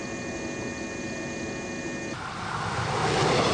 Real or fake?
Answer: real